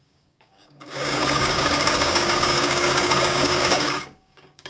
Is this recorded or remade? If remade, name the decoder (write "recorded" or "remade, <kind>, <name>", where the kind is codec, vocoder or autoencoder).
remade, codec, DAC